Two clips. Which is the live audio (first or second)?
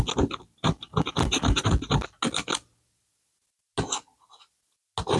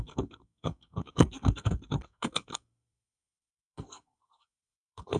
first